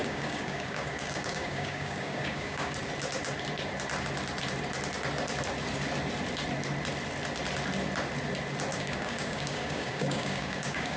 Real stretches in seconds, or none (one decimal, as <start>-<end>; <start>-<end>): 2.8-8.7

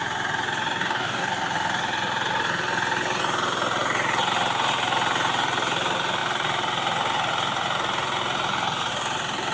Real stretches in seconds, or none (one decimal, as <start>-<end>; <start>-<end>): 0.0-0.8; 1.3-9.5

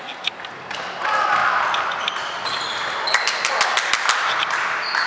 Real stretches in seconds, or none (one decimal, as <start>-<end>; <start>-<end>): 0.0-5.1

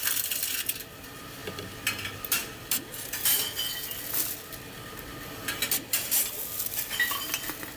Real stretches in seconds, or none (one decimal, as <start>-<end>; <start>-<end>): 0.0-7.8

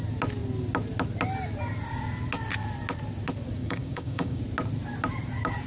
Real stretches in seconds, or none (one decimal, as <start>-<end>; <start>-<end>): 0.0-3.6; 4.4-5.7

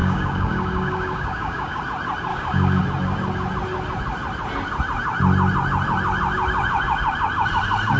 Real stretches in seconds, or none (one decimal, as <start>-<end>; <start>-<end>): 1.8-2.3; 2.8-8.0